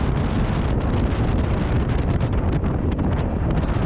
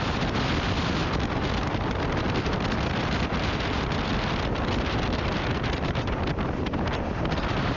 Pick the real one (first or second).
first